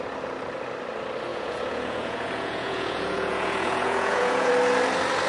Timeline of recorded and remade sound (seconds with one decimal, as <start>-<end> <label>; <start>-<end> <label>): 0.0-1.3 recorded; 1.3-4.5 remade; 4.5-5.3 recorded